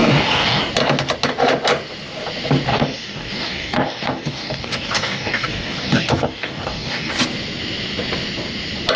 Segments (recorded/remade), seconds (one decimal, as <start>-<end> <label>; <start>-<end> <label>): 0.0-0.6 remade; 0.6-2.7 recorded; 2.7-7.1 remade; 7.1-9.0 recorded